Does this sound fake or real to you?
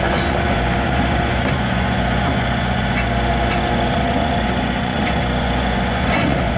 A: fake